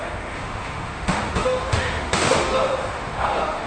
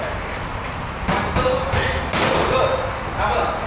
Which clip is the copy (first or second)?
first